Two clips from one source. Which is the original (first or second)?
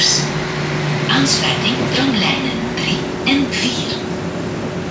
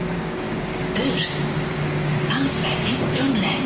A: first